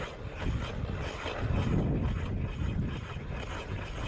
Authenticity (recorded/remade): recorded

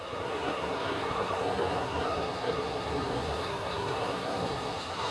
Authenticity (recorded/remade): remade